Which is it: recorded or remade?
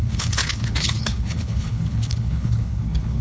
remade